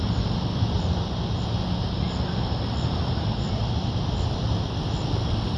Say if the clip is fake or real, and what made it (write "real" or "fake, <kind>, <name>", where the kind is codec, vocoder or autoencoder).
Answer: real